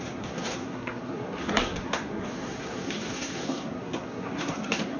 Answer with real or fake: fake